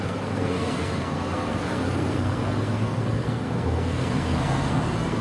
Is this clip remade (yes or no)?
yes